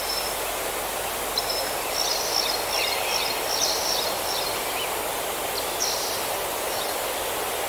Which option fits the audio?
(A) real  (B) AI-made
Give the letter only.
A